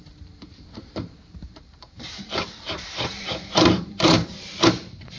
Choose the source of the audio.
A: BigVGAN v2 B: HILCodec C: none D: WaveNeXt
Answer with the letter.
A